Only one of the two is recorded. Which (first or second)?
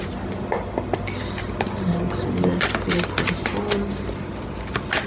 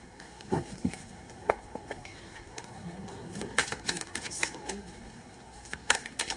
first